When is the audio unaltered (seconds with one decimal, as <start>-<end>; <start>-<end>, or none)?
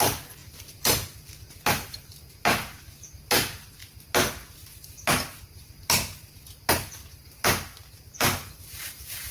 0.0-0.4; 2.3-7.8